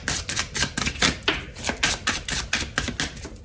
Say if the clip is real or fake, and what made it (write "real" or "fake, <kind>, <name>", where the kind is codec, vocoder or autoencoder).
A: real